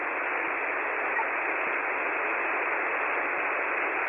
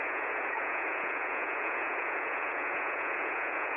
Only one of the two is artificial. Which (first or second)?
second